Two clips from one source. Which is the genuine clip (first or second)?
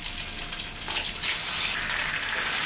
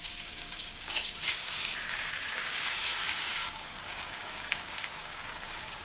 first